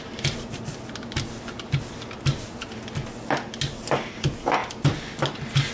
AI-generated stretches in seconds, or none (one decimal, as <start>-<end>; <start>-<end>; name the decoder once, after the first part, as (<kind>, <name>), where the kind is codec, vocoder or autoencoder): none